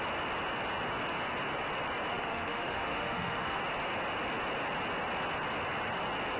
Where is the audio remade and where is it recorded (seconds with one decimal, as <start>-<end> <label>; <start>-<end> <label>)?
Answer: 0.0-2.1 recorded; 2.1-3.6 remade; 3.6-6.4 recorded